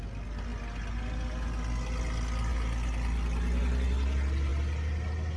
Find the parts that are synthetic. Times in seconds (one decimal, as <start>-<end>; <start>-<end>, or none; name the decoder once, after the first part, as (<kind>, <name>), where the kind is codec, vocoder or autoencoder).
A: none